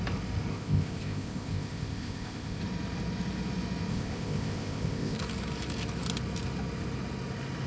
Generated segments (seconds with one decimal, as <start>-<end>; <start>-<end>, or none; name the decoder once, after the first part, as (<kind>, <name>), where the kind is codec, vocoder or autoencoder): 0.5-2.6 (codec, ZipCodec); 3.9-5.2